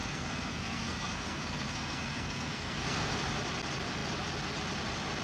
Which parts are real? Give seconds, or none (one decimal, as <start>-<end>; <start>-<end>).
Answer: 3.1-5.2